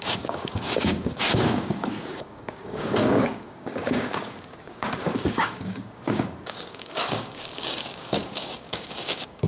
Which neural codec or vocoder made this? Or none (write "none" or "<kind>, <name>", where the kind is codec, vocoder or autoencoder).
codec, DAC